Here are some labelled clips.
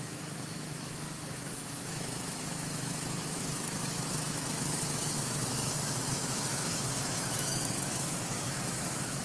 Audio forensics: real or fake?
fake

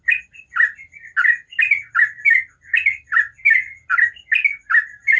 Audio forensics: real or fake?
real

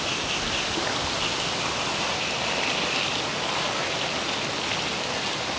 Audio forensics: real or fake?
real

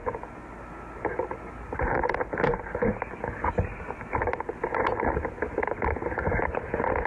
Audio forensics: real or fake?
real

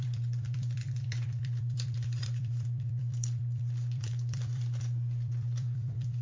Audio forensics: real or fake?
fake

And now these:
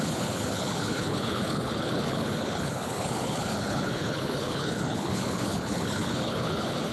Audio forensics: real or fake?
fake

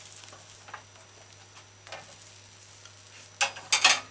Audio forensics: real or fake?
real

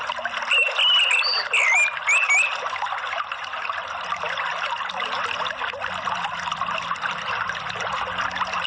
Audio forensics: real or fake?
real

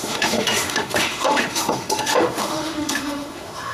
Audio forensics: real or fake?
fake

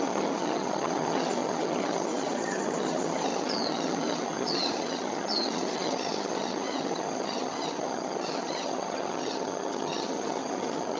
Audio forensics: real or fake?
fake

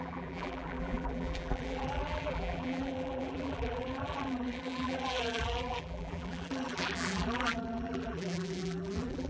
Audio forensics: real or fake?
fake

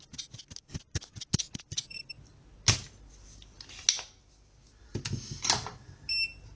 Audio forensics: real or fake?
real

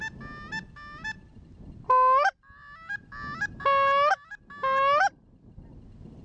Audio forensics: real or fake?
real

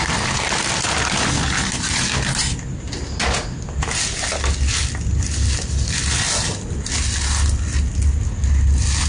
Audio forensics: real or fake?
real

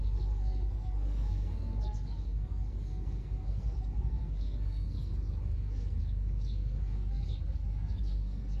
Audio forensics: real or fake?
fake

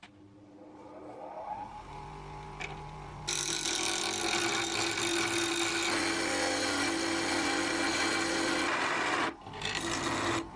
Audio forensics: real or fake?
real